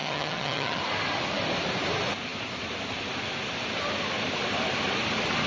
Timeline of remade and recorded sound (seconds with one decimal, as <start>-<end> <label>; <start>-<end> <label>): 0.0-0.8 remade; 0.8-5.5 recorded